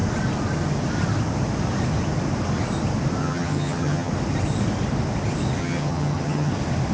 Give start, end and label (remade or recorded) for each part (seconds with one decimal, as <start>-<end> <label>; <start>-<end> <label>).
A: 0.0-3.2 recorded; 3.2-4.1 remade; 4.1-5.6 recorded; 5.6-6.5 remade; 6.5-6.9 recorded